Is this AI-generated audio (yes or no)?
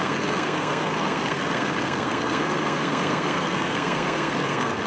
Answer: yes